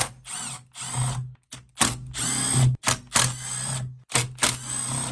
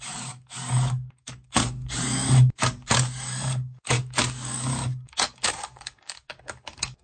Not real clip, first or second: second